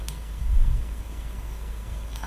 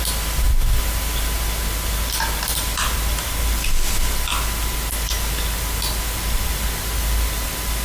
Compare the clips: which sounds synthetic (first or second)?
first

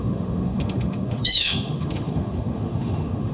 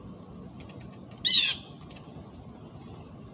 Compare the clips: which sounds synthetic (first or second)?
first